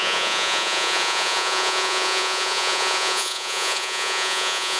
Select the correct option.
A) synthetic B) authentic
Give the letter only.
A